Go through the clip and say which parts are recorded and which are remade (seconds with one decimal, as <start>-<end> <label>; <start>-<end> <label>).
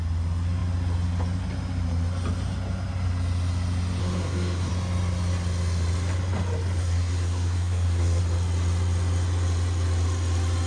0.0-4.0 recorded; 4.0-4.7 remade; 4.7-6.8 recorded; 6.8-8.2 remade; 8.2-10.7 recorded